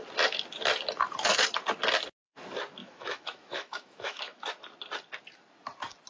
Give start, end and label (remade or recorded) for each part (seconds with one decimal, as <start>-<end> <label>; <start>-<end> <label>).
0.0-2.8 recorded; 2.8-4.5 remade; 4.5-6.1 recorded